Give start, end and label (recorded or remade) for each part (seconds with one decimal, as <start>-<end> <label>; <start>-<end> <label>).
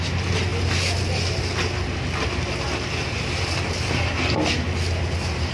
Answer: 0.0-5.5 recorded